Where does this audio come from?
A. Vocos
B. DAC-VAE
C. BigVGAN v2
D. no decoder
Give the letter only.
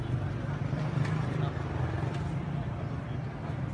D